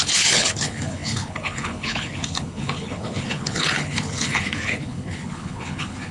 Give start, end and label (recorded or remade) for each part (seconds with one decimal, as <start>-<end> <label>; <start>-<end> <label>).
0.0-6.1 remade